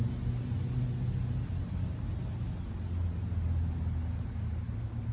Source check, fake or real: real